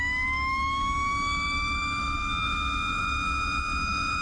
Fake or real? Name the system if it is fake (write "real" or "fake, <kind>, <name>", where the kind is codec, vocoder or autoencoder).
fake, autoencoder, DAC-VAE